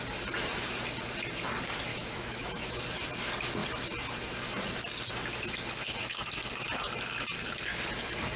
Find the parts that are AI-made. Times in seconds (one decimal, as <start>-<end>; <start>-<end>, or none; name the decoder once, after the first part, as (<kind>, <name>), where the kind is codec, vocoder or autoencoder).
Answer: 1.9-2.8 (autoencoder, DAC-VAE)